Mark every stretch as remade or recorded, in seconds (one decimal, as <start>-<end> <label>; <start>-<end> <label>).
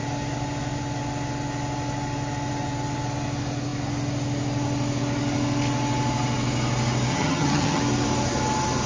0.0-7.1 recorded; 7.1-7.8 remade; 7.8-8.9 recorded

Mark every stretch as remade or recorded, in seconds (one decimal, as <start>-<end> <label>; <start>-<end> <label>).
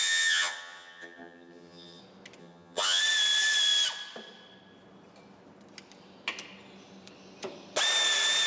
0.0-2.0 remade; 2.0-2.4 recorded; 2.4-3.0 remade; 3.0-8.5 recorded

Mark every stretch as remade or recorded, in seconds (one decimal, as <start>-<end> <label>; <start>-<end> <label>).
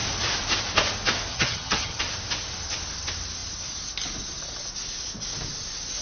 0.0-1.3 recorded; 1.3-2.0 remade; 2.0-6.0 recorded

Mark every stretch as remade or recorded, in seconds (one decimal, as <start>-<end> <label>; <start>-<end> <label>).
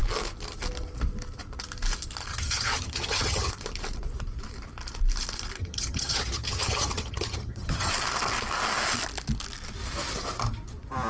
0.0-2.3 recorded; 2.3-3.5 remade; 3.5-5.6 recorded; 5.6-7.9 remade; 7.9-11.1 recorded